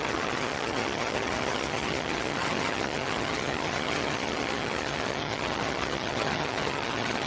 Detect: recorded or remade remade